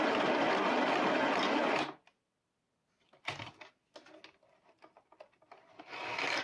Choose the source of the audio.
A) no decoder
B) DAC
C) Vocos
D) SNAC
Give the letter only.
A